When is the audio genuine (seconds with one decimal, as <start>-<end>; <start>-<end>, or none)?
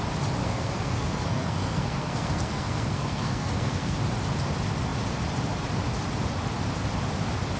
0.0-0.4; 4.0-7.6